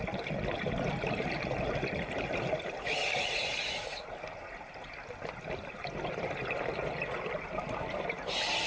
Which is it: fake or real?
real